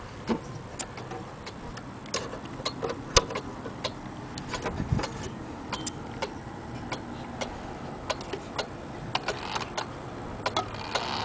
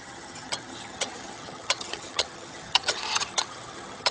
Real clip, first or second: first